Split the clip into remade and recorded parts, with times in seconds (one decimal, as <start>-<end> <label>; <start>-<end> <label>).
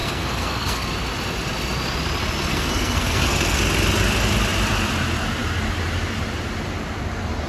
0.0-0.9 remade; 0.9-2.5 recorded; 2.5-3.6 remade; 3.6-7.5 recorded